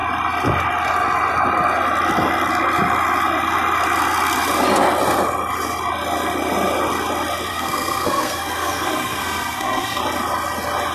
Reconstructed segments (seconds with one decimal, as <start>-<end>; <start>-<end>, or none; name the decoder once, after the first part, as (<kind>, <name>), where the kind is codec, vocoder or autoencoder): 7.5-10.0 (codec, SNAC)

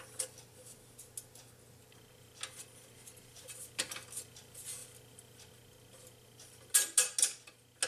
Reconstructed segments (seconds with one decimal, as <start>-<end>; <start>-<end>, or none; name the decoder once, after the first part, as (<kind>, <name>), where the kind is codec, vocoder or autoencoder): none

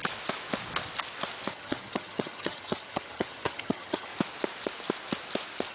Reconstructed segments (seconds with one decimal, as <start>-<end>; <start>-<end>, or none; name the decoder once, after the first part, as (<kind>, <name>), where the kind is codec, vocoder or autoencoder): 1.5-4.1 (vocoder, HiFi-GAN)

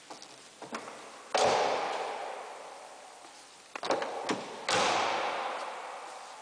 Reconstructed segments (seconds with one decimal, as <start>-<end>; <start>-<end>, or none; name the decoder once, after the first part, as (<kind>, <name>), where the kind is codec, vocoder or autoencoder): none

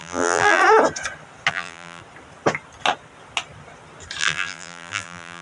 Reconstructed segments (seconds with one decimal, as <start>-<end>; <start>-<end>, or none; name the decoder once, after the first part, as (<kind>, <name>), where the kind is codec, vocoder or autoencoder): 0.0-0.6 (vocoder, BigVGAN v2); 1.5-2.0; 4.2-5.4